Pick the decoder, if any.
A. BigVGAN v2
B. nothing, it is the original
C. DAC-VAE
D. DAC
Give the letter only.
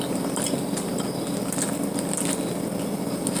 B